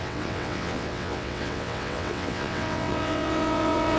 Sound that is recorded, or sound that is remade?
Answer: remade